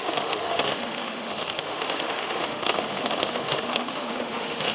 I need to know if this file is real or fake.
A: fake